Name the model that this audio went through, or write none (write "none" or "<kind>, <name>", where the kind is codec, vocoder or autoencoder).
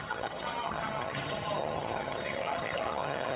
vocoder, HiFi-GAN